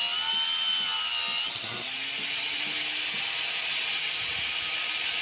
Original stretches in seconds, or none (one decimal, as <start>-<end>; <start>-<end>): 0.0-5.2